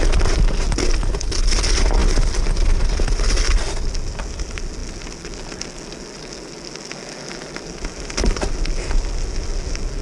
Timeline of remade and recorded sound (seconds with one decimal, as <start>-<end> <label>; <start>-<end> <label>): 0.0-10.0 recorded